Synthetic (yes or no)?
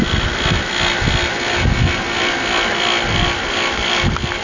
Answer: no